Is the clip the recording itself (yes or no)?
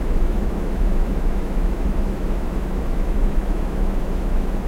no